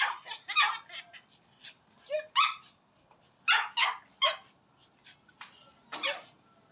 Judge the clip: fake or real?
real